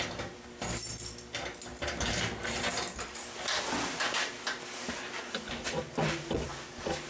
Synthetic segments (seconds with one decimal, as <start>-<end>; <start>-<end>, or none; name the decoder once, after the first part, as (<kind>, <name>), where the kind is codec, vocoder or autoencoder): 1.7-3.6 (vocoder, BigVGAN v2)